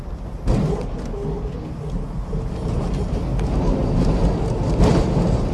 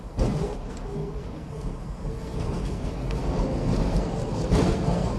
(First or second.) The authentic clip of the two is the first